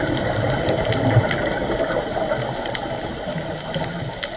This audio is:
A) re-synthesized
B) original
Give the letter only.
B